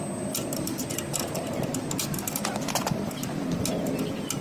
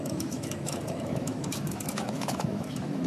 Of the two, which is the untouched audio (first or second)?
first